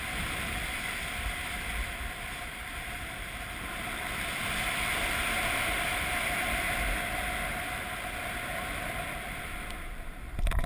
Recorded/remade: remade